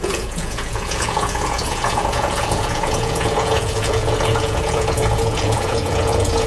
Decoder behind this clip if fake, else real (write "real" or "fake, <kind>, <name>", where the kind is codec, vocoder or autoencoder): fake, vocoder, Vocos